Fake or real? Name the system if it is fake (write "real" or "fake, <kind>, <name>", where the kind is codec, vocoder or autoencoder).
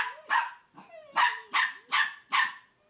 real